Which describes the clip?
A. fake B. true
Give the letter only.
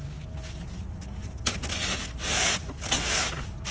B